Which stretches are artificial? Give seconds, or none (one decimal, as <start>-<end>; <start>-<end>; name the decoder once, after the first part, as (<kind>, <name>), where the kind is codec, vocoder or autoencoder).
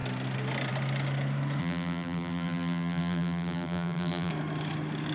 1.6-4.3 (vocoder, BigVGAN v2)